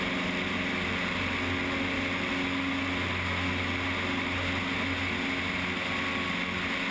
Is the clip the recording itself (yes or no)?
yes